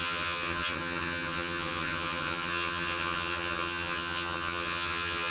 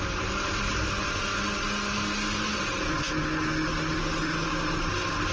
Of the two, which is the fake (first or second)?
first